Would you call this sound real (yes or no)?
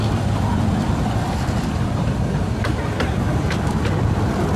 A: yes